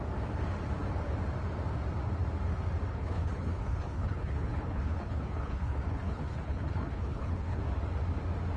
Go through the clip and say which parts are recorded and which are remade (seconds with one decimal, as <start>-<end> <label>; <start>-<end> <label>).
0.0-2.9 recorded; 2.9-7.6 remade; 7.6-8.6 recorded